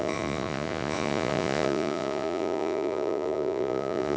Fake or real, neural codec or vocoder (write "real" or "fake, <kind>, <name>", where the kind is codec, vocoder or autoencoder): fake, vocoder, Vocos